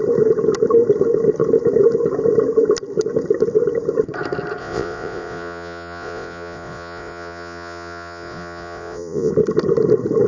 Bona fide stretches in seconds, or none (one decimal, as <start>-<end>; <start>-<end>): 0.0-4.6; 9.3-10.3